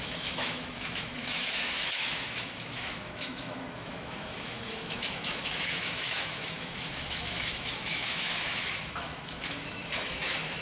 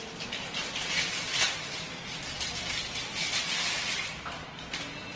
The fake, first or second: first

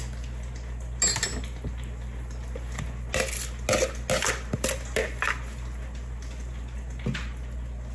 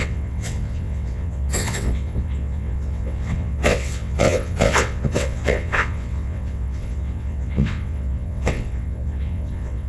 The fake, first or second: second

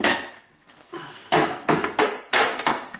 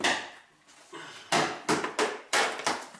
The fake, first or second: first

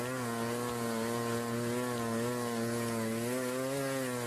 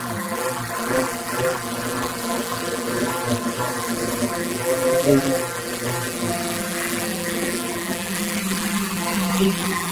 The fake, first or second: second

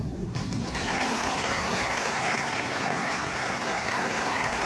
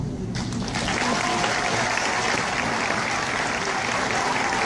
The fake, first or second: first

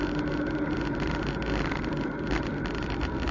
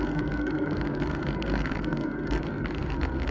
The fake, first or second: second